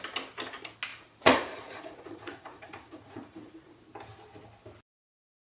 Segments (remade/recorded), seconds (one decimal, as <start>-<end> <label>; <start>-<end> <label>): 0.0-0.9 recorded; 0.9-3.8 remade; 3.8-5.5 recorded